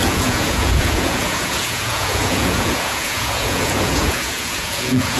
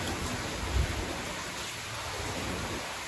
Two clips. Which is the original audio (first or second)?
second